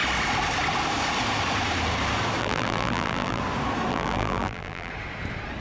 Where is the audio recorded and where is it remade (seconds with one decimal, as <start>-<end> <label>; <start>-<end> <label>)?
0.0-2.4 recorded; 2.4-3.4 remade; 3.4-3.9 recorded; 3.9-4.9 remade; 4.9-5.6 recorded

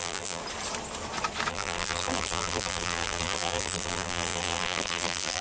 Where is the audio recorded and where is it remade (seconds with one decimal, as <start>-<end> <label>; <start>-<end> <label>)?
0.0-0.4 remade; 0.4-1.5 recorded; 1.5-5.4 remade

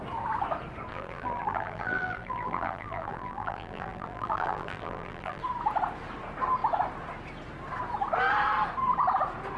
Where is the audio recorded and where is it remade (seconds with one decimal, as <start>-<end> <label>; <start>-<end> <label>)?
0.0-0.9 recorded; 0.9-5.4 remade; 5.4-9.6 recorded

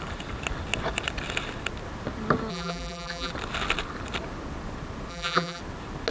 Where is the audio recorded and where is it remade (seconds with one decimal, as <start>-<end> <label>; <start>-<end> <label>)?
0.0-2.5 recorded; 2.5-3.3 remade; 3.3-5.1 recorded; 5.1-5.6 remade; 5.6-6.1 recorded